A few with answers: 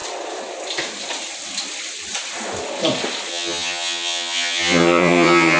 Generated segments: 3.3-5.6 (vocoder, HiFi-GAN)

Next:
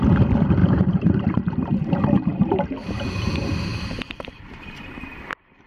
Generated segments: 0.6-1.4 (vocoder, BigVGAN v2); 3.7-5.0

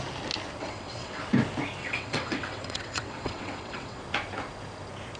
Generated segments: 0.6-1.2 (vocoder, WaveNeXt); 1.8-4.0

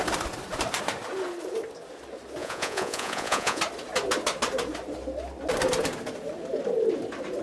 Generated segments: 2.4-3.6 (vocoder, Vocos)

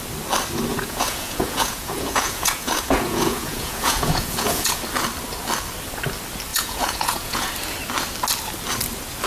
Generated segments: 0.7-4.8 (vocoder, Vocos); 6.5-7.5

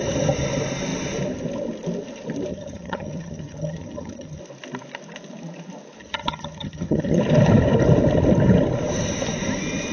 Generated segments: 2.5-4.4 (vocoder, HiFi-GAN); 6.0-7.2

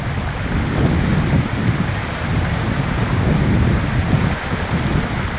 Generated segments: 1.1-4.3 (vocoder, BigVGAN v2)